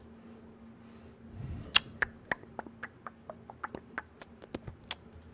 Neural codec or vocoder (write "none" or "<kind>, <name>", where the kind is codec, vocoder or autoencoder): none